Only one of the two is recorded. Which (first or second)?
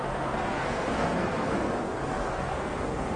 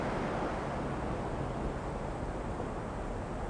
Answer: second